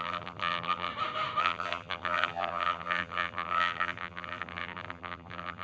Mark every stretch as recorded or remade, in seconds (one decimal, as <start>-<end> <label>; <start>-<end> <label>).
0.0-0.9 remade; 0.9-1.4 recorded; 1.4-5.6 remade